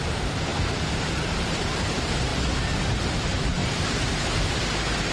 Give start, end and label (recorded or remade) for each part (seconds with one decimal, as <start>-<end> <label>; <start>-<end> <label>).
0.0-2.3 remade; 2.3-3.0 recorded; 3.0-5.1 remade